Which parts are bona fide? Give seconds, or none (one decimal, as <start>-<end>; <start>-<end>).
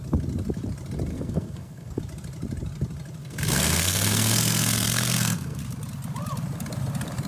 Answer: 0.0-1.1; 2.0-3.2; 5.6-7.3